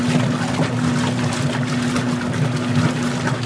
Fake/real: real